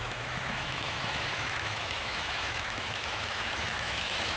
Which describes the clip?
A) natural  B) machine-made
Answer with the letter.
B